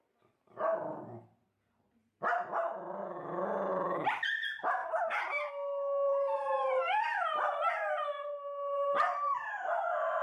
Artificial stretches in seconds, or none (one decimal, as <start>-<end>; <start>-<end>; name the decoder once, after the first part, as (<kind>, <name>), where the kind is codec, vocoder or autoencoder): 3.7-4.2 (vocoder, BigVGAN v2); 4.8-5.5; 6.1-7.7